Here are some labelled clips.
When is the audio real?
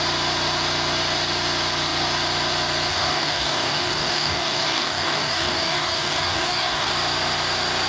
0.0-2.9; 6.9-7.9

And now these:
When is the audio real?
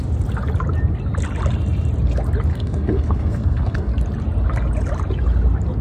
0.0-2.5; 3.9-5.8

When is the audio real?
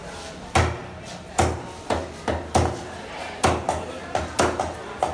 0.0-5.1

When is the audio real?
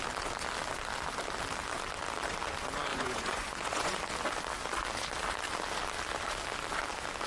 0.0-2.9; 4.0-7.3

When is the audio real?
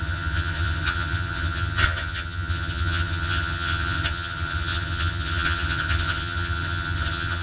none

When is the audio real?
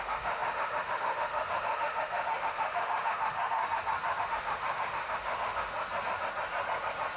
3.6-4.2; 5.7-7.2